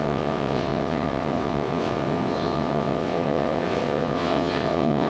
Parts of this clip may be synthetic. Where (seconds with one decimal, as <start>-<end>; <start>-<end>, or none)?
0.0-5.1